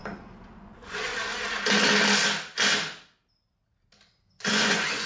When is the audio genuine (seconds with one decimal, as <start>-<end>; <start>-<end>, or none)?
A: 0.0-0.6; 1.1-4.2